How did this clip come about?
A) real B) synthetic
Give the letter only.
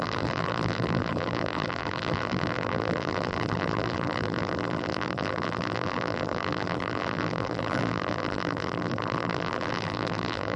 B